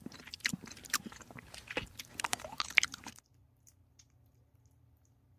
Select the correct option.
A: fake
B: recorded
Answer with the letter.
A